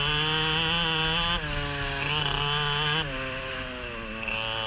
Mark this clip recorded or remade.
recorded